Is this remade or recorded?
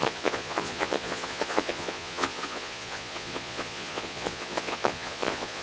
remade